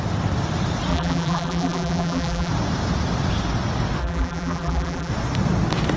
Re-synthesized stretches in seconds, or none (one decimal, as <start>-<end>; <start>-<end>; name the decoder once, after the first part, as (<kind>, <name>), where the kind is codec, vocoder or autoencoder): 0.9-2.5 (vocoder, BigVGAN v2); 4.0-5.1